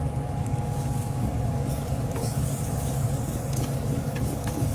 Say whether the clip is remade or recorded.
remade